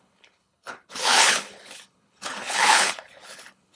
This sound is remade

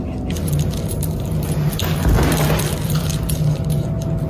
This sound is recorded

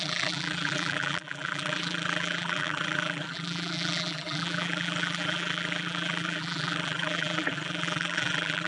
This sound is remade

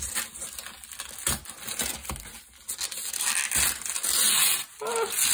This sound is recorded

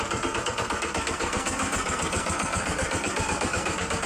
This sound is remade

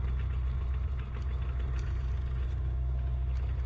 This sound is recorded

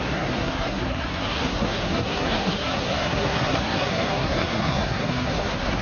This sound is remade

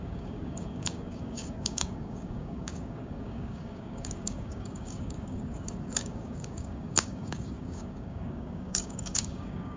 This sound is remade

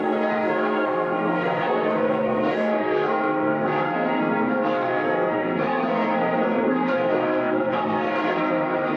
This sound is remade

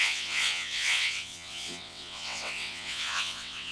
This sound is remade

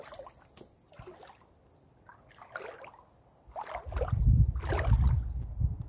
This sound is recorded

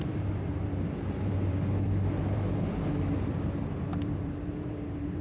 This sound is remade